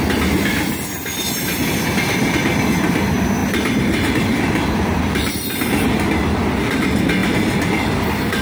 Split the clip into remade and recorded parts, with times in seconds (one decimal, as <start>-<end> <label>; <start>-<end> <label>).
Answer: 0.0-3.4 recorded; 3.4-5.3 remade; 5.3-8.4 recorded